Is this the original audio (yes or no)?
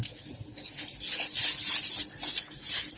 yes